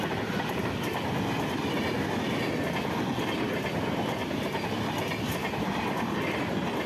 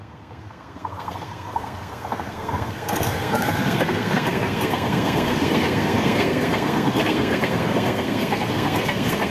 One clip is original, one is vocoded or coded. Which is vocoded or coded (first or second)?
second